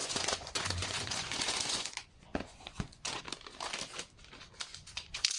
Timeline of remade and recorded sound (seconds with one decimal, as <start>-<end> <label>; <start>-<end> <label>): 0.0-3.2 remade; 3.2-4.7 recorded; 4.7-5.4 remade